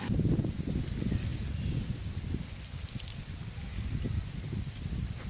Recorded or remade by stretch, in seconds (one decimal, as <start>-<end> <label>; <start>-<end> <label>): 0.0-5.3 recorded